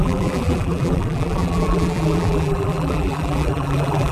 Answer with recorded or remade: remade